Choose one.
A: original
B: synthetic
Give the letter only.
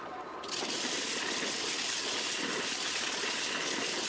A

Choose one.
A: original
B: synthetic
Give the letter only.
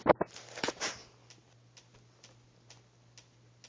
A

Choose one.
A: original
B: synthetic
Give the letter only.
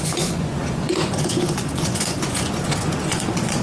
B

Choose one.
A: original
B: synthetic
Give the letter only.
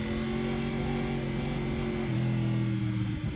A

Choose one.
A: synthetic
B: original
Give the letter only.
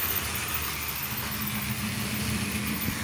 B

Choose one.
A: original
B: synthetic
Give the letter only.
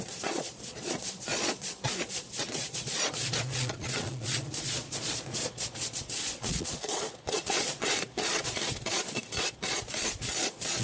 B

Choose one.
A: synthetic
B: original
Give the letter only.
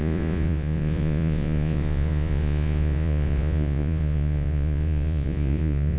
A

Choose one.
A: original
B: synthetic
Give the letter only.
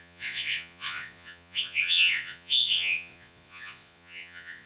B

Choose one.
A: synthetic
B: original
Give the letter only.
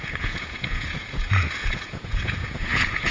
A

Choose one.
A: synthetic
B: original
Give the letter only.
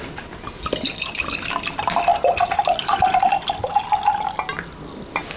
B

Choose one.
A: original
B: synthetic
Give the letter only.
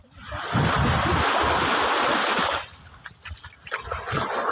A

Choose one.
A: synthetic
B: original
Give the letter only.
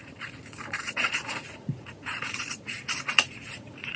A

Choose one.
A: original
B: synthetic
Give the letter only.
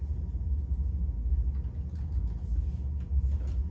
A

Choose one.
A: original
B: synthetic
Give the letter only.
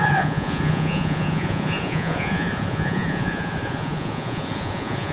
B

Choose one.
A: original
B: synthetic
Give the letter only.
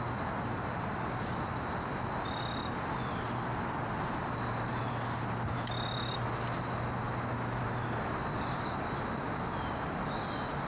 A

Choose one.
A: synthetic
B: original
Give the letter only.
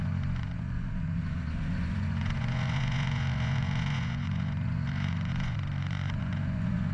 A